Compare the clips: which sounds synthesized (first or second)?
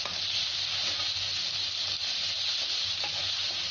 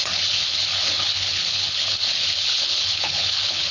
second